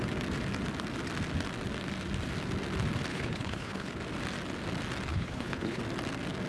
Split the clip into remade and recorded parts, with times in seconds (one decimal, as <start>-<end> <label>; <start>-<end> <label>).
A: 0.0-3.1 recorded; 3.1-3.9 remade; 3.9-5.1 recorded; 5.1-5.8 remade; 5.8-6.5 recorded